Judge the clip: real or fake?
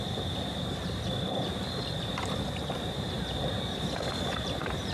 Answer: fake